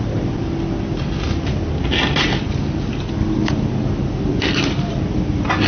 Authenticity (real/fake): real